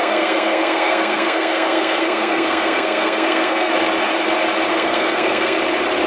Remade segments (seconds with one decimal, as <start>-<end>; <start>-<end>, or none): 0.0-3.7; 4.7-5.6